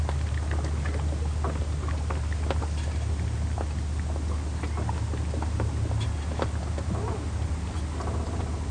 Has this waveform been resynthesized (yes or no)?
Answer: no